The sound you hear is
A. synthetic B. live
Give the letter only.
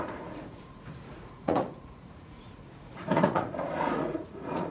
A